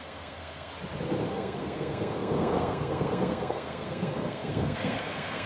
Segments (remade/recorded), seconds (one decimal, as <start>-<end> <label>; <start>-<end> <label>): 0.0-0.7 remade; 0.7-1.3 recorded; 1.3-5.5 remade